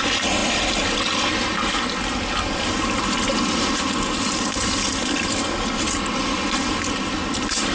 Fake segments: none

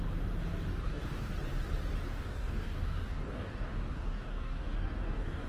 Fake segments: 0.7-1.3 (codec, DAC); 2.1-5.5

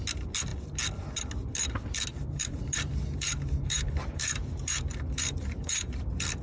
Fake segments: 2.1-5.9 (vocoder, BigVGAN v2)

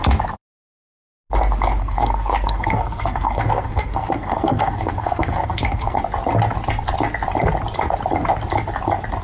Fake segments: 1.8-6.0 (codec, SNAC)

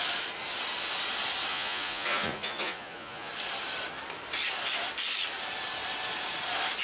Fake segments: 1.5-3.3 (vocoder, Vocos)